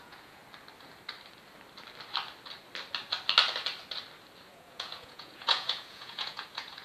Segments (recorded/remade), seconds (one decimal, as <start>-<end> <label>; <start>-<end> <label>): 0.0-0.4 remade; 0.4-4.5 recorded; 4.5-6.8 remade